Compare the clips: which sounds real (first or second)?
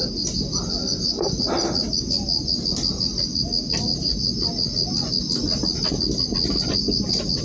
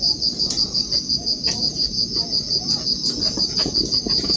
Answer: first